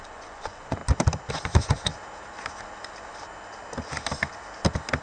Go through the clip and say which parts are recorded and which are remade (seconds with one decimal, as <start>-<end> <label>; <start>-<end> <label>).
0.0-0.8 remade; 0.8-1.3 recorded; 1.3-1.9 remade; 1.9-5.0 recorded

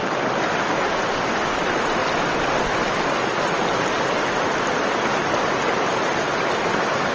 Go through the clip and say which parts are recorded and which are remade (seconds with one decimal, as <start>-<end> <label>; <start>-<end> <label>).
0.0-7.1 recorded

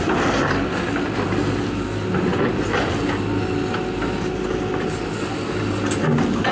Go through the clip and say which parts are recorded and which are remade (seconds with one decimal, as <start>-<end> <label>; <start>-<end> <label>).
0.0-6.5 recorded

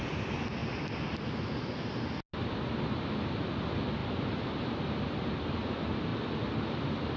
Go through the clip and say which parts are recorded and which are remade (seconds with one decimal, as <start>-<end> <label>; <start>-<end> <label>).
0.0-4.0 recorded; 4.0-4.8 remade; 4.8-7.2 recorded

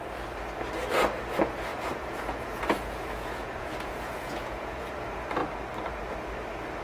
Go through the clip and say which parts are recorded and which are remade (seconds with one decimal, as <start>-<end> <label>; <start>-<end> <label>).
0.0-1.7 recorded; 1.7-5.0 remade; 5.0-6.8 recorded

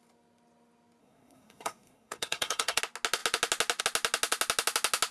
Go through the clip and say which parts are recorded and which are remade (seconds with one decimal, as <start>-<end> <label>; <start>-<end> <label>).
0.0-1.0 recorded; 1.0-2.8 remade; 2.8-5.1 recorded

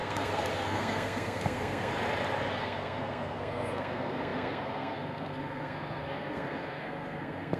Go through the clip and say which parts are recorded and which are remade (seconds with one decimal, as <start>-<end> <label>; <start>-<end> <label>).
0.0-1.9 remade; 1.9-2.5 recorded; 2.5-7.6 remade